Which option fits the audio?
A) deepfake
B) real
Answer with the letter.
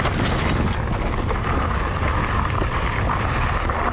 B